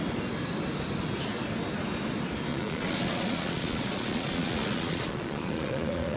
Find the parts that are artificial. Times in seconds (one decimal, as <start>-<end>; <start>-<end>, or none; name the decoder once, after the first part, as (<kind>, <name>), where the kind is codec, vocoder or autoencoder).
2.5-6.2 (vocoder, Vocos)